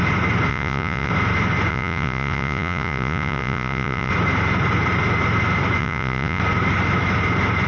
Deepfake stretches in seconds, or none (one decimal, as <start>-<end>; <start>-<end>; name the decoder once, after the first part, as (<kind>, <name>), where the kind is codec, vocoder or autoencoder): 0.5-1.1 (vocoder, Vocos); 1.7-4.1; 5.8-6.4